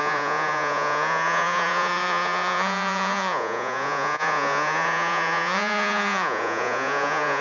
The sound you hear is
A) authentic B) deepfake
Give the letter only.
B